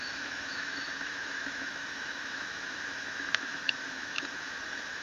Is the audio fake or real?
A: fake